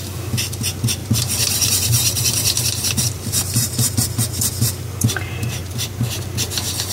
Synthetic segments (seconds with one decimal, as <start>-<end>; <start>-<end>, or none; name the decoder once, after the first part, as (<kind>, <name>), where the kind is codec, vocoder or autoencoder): 1.0-3.9 (vocoder, BigVGAN v2); 5.6-6.2